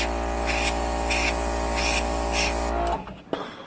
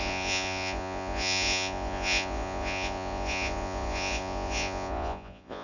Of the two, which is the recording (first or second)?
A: first